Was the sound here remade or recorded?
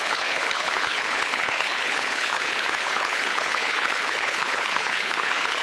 remade